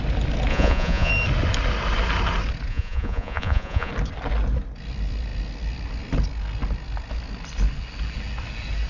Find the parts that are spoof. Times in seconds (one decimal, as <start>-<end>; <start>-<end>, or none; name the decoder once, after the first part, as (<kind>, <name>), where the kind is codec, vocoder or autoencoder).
0.5-1.1 (vocoder, Vocos); 2.7-3.9